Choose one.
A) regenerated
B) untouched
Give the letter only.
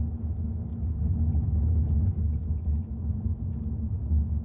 B